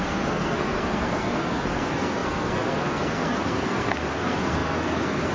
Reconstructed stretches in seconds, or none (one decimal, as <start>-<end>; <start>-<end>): 0.0-5.3